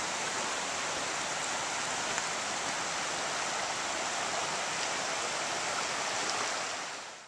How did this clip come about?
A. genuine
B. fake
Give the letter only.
A